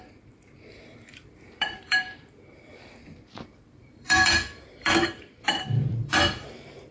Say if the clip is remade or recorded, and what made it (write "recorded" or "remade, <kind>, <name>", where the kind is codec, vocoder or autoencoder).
remade, vocoder, BigVGAN v2